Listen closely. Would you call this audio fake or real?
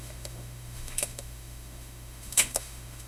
fake